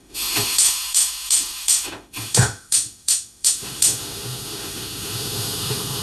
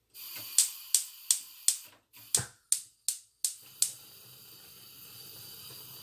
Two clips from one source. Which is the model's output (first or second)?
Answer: first